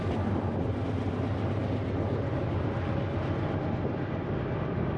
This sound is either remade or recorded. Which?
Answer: recorded